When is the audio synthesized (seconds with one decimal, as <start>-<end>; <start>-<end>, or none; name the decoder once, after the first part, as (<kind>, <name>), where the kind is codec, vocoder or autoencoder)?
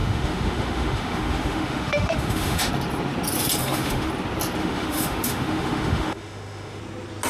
0.0-2.7 (autoencoder, DAC-VAE); 3.6-4.1; 4.6-6.8